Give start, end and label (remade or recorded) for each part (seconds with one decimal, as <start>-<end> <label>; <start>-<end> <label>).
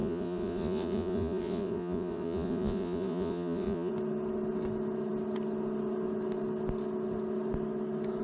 0.0-3.9 remade; 3.9-8.2 recorded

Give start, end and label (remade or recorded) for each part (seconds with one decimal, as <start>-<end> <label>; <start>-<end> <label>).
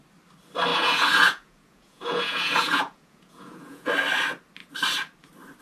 0.0-0.7 recorded; 0.7-3.9 remade; 3.9-5.6 recorded